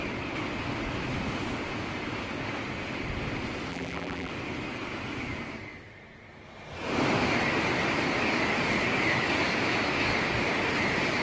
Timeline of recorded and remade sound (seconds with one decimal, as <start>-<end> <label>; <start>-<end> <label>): 0.0-3.7 recorded; 3.7-4.3 remade; 4.3-11.2 recorded